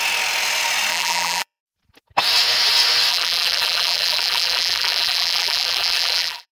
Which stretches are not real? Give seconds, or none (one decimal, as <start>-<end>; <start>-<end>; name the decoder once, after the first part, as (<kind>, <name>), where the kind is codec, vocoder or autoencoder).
0.9-1.6 (vocoder, BigVGAN v2); 3.1-6.5